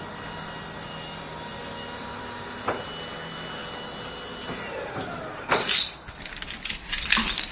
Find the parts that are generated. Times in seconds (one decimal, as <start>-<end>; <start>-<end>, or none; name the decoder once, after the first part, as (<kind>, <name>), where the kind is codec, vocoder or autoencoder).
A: 1.5-2.6 (vocoder, BigVGAN v2)